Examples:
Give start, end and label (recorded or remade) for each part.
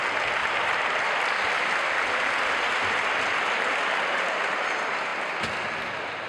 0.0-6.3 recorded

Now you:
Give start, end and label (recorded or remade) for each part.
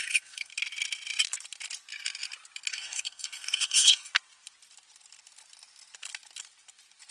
0.0-0.5 remade; 0.5-2.7 recorded; 2.7-4.1 remade; 4.1-7.1 recorded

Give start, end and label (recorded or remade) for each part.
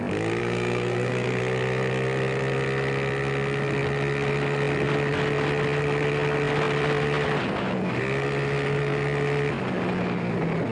0.0-0.4 recorded; 0.4-1.4 remade; 1.4-10.7 recorded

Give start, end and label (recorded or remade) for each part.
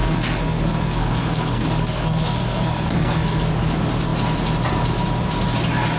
0.0-3.5 remade; 3.5-6.0 recorded